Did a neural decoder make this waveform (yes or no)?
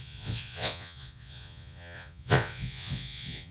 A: yes